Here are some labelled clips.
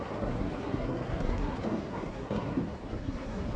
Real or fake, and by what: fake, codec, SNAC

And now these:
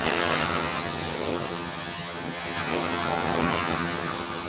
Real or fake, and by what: fake, vocoder, HiFi-GAN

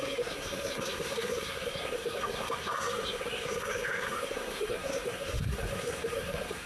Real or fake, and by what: fake, codec, SNAC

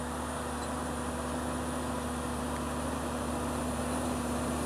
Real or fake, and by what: real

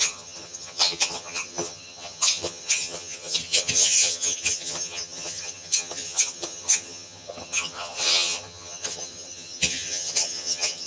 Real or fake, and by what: fake, vocoder, HiFi-GAN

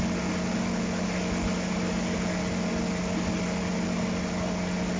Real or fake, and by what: real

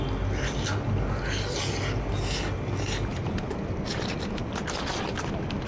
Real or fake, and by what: real